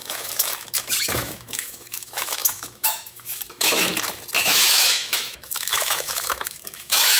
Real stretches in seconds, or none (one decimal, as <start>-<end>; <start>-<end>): 3.9-4.4